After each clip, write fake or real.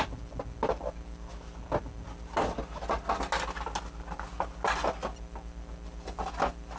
real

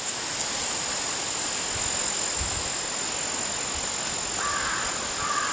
real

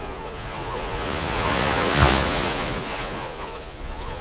fake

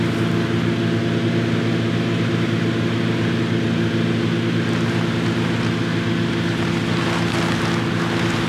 real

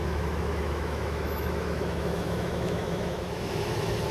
fake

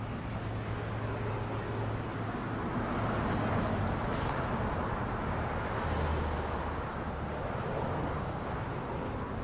real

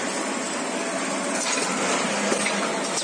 real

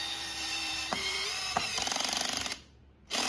fake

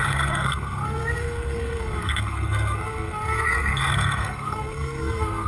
fake